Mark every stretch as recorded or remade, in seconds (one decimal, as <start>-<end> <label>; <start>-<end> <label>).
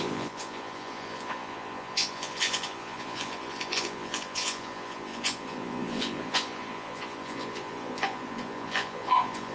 0.0-9.5 remade